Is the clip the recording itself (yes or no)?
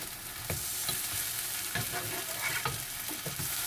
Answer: yes